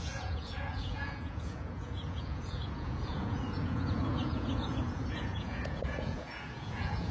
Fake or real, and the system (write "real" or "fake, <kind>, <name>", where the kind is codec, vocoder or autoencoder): fake, vocoder, Vocos